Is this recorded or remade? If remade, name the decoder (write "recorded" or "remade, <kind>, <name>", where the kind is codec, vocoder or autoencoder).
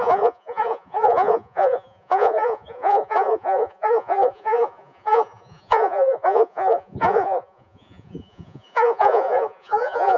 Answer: remade, vocoder, Vocos